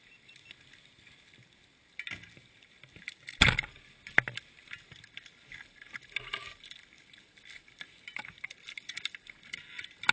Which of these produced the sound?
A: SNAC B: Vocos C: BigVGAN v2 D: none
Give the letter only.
D